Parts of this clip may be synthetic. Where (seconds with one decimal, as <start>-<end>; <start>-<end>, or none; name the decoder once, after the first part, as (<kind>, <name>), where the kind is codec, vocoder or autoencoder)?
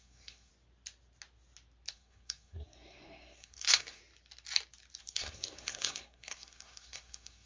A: 0.0-0.5 (codec, SNAC); 1.9-4.0; 5.0-7.5